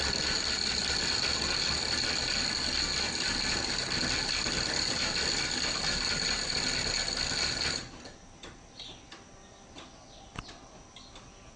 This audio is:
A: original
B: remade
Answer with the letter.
A